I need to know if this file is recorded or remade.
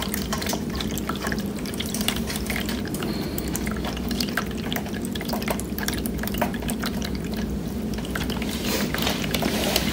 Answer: remade